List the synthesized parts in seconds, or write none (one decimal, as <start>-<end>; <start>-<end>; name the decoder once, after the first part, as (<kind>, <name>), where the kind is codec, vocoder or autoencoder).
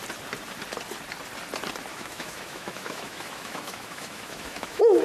1.9-5.0 (autoencoder, DAC-VAE)